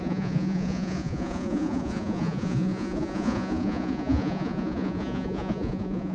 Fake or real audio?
fake